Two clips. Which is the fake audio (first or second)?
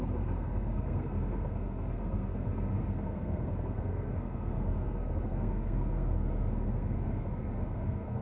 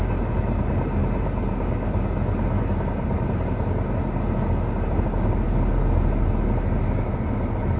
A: first